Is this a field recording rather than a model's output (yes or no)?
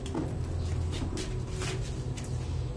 yes